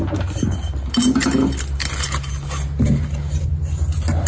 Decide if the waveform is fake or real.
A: real